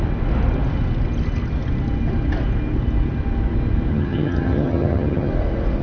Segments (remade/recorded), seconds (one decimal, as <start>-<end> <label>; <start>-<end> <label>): 0.0-3.9 recorded; 3.9-5.3 remade; 5.3-5.8 recorded